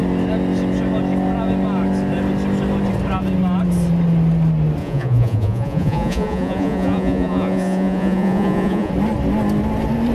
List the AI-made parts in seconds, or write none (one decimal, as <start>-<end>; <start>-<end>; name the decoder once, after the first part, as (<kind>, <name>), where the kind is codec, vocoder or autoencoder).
4.8-8.9 (vocoder, Vocos)